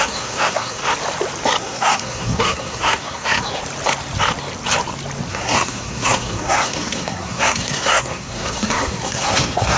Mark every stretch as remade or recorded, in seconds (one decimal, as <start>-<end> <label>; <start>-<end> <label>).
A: 0.0-0.8 remade; 0.8-1.6 recorded; 1.6-3.6 remade; 3.6-5.3 recorded; 5.3-9.8 remade